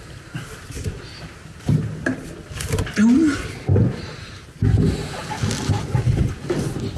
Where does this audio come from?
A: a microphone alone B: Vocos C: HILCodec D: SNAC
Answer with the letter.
A